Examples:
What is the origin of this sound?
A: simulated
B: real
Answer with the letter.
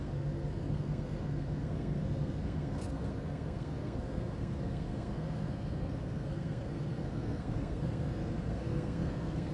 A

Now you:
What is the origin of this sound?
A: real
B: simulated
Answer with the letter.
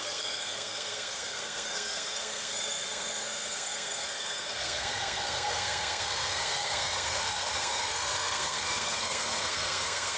B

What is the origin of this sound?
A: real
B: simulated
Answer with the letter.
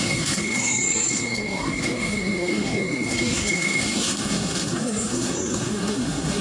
B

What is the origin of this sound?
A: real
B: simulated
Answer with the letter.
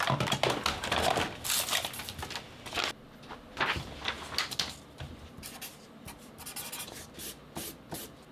A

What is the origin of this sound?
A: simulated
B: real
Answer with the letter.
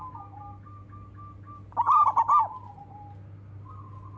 B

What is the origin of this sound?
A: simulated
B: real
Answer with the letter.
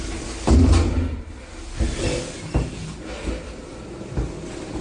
B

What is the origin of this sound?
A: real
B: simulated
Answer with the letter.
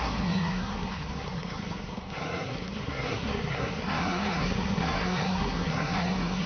B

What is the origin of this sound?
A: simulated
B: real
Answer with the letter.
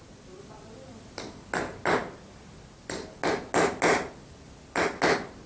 B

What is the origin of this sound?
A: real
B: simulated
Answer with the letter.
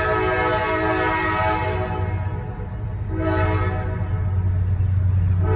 A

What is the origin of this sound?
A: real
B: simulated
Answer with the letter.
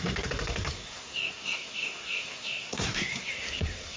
B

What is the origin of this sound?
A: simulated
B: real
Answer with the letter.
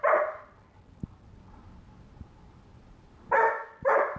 B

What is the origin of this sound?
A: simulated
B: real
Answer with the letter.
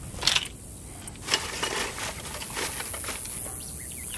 B